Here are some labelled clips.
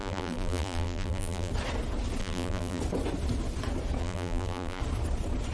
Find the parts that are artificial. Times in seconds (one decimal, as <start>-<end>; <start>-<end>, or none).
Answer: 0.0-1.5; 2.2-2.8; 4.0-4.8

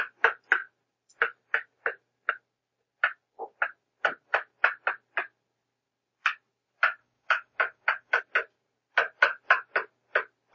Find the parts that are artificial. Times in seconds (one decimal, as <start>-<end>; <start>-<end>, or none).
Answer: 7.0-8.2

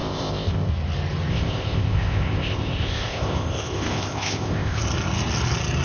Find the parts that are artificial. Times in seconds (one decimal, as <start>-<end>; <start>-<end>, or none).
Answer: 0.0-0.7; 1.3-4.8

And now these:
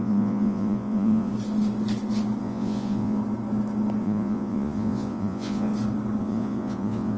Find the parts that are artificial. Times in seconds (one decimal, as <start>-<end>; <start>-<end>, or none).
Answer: 0.0-1.3; 2.4-3.2; 4.0-5.7; 6.2-7.2